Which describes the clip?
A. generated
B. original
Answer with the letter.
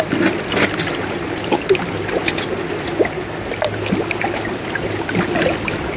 B